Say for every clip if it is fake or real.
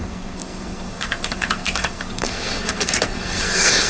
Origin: fake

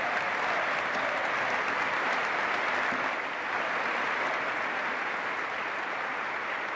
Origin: real